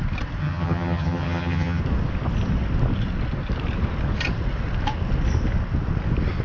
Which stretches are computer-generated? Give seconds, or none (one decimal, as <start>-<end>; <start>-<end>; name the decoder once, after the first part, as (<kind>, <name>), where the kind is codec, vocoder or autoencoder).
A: 0.4-1.8 (vocoder, HiFi-GAN)